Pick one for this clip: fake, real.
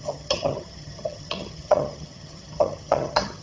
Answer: fake